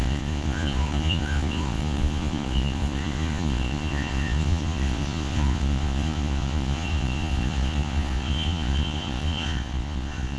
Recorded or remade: remade